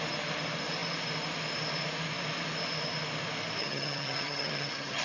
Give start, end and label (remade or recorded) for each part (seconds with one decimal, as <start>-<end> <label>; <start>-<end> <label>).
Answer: 0.0-3.6 recorded; 3.6-5.0 remade